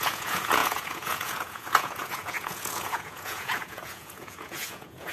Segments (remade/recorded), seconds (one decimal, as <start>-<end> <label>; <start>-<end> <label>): 0.0-5.1 remade